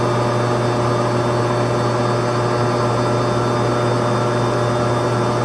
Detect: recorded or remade recorded